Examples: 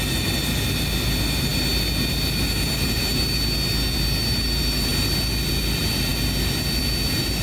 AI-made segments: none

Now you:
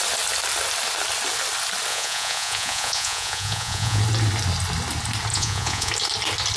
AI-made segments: 1.9-4.0 (vocoder, Vocos); 5.3-5.9

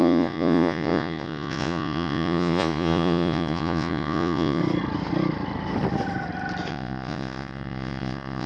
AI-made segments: 0.0-4.6 (vocoder, Vocos); 6.7-8.5